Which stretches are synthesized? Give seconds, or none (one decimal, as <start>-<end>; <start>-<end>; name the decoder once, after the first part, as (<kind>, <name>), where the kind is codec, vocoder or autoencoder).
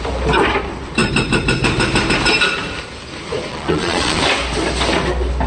3.5-4.2 (vocoder, Vocos)